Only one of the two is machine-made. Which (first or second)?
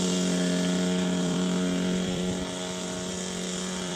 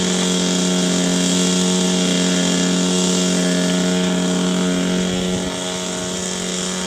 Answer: first